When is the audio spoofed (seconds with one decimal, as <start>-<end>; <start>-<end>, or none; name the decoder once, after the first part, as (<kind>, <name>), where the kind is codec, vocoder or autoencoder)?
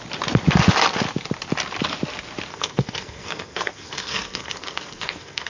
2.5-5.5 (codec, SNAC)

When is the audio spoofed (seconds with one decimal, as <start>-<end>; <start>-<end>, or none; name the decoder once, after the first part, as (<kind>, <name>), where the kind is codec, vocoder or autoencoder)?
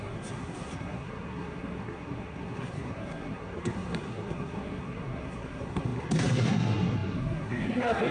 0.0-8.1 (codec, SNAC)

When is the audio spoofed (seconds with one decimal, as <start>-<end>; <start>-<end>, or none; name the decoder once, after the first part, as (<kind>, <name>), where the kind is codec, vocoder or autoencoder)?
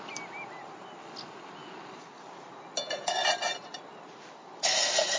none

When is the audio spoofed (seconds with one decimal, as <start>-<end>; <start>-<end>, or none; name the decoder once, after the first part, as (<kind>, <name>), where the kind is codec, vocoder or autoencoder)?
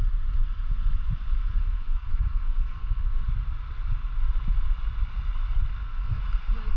1.4-3.3 (codec, SNAC); 5.7-6.2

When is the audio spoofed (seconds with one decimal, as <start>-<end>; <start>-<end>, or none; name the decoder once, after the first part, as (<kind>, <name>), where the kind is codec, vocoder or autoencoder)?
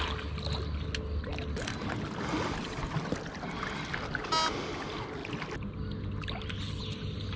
none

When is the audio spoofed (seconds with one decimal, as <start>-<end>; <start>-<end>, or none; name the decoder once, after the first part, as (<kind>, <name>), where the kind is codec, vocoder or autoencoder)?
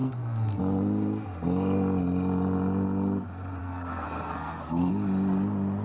0.0-0.6 (codec, SNAC); 3.6-4.9